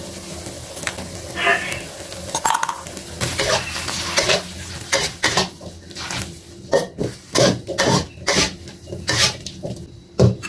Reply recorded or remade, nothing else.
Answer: recorded